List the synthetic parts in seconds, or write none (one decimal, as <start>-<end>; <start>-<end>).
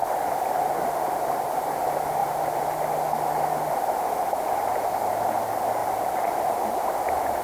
0.0-1.8; 5.8-6.4